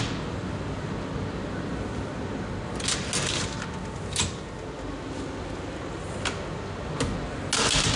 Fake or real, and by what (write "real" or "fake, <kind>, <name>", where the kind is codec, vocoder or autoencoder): real